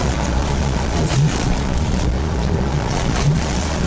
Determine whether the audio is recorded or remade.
remade